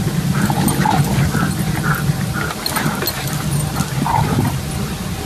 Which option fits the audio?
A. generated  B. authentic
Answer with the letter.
B